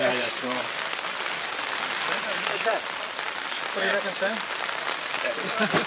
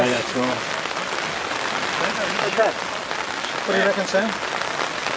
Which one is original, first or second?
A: second